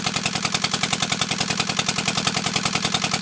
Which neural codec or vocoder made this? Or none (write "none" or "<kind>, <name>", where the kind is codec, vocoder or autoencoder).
none